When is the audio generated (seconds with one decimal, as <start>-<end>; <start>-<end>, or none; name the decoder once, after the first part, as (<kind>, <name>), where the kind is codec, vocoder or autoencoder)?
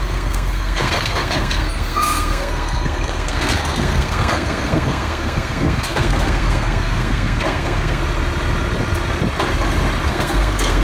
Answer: 0.0-8.0 (codec, SNAC); 10.1-10.8